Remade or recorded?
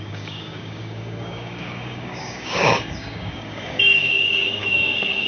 remade